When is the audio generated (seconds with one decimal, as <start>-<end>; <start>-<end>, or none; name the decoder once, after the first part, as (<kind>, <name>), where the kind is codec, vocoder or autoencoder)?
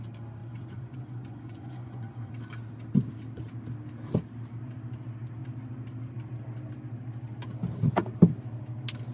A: 0.4-2.3 (vocoder, Vocos)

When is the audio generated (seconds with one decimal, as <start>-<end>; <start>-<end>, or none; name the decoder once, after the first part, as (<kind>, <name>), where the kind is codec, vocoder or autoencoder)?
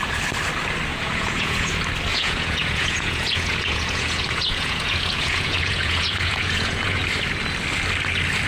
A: 0.9-1.7 (vocoder, Vocos); 2.1-7.0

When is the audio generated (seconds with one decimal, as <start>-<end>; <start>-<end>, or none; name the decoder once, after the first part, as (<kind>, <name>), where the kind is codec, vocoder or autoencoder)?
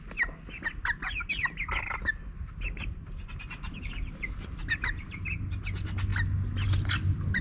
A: none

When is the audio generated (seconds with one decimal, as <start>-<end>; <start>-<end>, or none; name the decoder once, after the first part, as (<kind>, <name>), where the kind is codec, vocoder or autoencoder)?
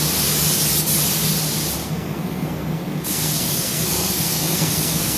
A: 1.8-5.2 (codec, SNAC)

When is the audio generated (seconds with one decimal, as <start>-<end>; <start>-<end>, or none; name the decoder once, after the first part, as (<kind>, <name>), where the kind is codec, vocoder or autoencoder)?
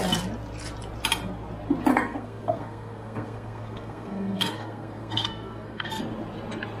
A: 1.9-6.0 (codec, SNAC)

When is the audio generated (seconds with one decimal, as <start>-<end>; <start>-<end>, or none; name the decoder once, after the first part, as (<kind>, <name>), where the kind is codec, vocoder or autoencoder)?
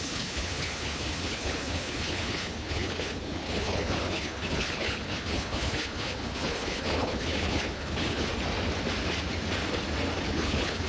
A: 0.0-8.3 (codec, HILCodec); 10.3-10.9